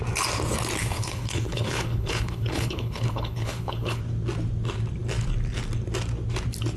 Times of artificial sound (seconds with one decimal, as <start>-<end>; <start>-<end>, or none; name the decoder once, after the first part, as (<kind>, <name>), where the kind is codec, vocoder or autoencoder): 0.8-4.0 (codec, HILCodec)

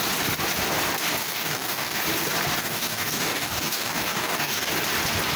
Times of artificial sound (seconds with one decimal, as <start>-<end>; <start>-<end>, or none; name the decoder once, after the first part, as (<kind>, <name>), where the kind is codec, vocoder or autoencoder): 1.2-2.0 (codec, DAC); 2.6-4.7